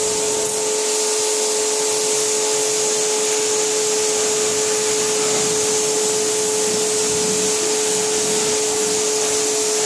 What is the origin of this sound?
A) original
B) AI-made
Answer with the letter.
A